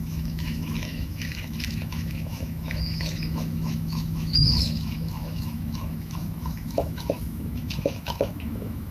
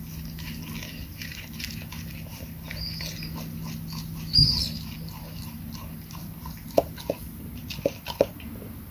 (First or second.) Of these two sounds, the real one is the second